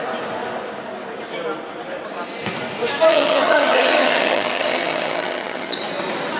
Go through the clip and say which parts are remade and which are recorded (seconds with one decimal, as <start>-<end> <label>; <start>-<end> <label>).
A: 0.0-3.1 recorded; 3.1-5.8 remade; 5.8-6.4 recorded